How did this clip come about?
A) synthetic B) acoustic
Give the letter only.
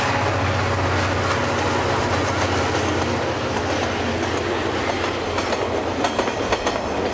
B